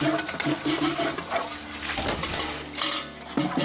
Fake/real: real